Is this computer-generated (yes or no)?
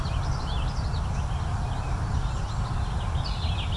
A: no